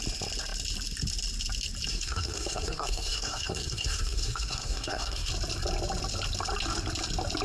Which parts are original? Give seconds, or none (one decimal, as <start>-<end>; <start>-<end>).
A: 0.0-1.9; 5.3-7.4